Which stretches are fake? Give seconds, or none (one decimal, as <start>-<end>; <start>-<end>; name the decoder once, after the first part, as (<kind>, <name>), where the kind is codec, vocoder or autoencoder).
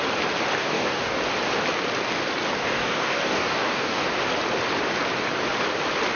0.6-1.2 (codec, DAC); 2.6-4.0